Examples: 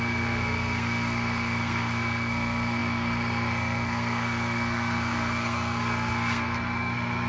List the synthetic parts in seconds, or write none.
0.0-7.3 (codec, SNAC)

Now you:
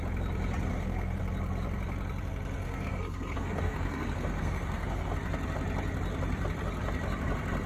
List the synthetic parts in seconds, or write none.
0.7-1.2 (codec, SNAC); 2.6-5.1

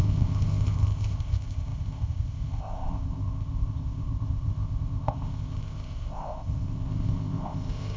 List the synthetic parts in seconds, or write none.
0.0-8.0 (codec, ZipCodec)

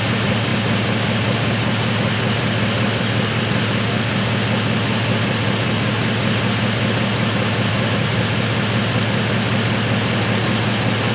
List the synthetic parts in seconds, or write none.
none

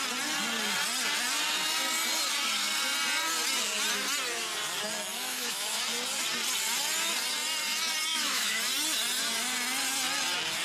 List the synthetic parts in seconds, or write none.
5.1-5.8 (autoencoder, DAC-VAE); 8.1-8.6

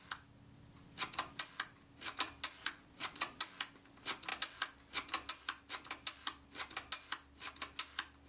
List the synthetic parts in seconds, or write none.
2.6-3.4 (vocoder, Vocos)

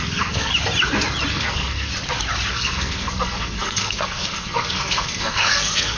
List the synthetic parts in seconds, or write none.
0.0-0.5 (codec, SNAC); 1.3-1.9; 2.5-6.0

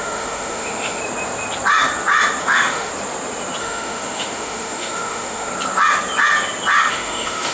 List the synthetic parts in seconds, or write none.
0.0-1.0 (autoencoder, DAC-VAE); 2.4-2.9; 3.6-5.5; 6.9-7.5